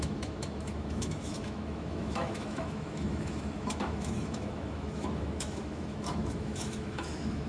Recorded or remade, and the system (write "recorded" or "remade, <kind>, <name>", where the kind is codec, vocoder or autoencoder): remade, autoencoder, DAC-VAE